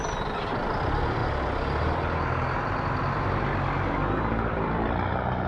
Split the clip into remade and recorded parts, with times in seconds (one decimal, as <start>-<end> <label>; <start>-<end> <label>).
0.0-1.2 remade; 1.2-4.5 recorded; 4.5-5.5 remade